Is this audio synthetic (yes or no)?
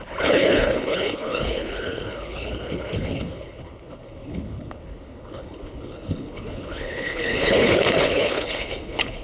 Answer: yes